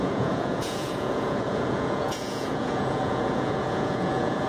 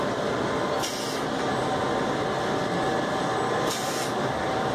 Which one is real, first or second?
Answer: second